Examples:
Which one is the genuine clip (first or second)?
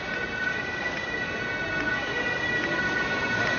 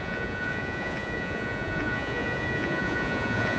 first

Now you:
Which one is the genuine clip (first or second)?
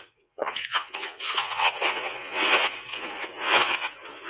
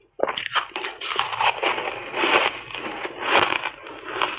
second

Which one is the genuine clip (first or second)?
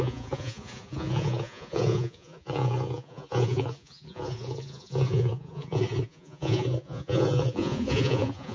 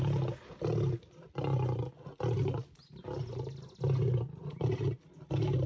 second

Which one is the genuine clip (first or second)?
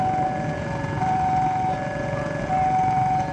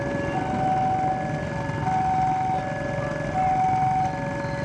second